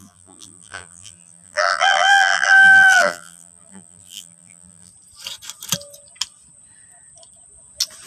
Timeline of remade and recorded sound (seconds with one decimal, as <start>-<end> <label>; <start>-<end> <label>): 0.0-4.9 remade; 4.9-8.1 recorded